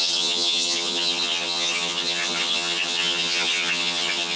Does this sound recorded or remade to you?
remade